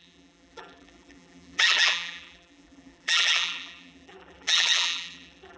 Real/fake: fake